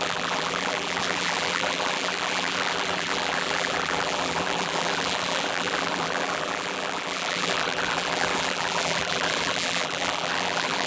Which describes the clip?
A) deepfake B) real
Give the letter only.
A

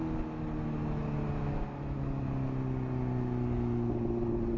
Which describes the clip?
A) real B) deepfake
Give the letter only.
A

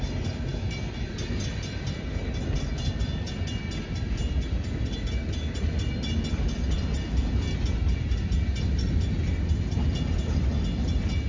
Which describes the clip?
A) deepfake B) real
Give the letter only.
B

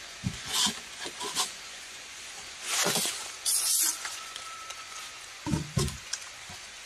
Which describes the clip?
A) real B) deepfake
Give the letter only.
B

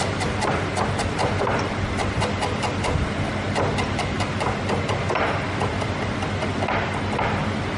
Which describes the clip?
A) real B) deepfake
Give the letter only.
A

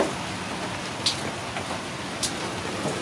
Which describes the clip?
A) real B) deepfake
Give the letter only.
A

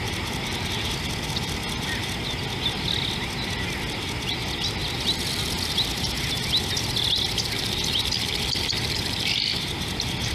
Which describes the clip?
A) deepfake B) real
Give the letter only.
B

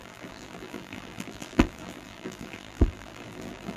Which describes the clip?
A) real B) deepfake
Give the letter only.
B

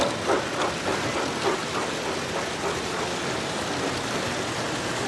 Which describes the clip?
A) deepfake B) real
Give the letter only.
B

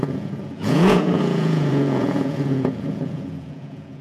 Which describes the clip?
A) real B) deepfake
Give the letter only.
B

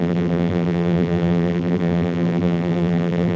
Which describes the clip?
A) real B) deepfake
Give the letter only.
B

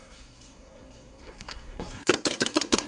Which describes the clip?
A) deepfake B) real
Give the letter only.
A